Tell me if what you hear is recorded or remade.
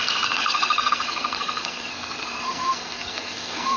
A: remade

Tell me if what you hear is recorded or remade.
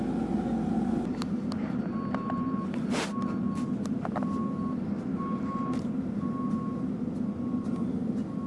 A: recorded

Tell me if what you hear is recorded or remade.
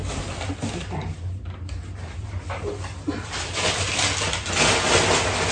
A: recorded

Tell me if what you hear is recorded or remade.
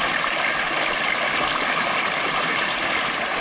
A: remade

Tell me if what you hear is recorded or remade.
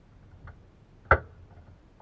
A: recorded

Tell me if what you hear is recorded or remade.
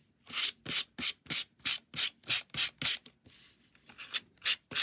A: recorded